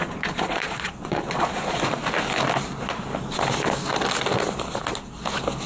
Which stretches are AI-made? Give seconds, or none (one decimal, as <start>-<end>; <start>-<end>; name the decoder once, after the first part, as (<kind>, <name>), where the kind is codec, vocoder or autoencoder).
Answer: 0.0-2.0 (vocoder, Vocos)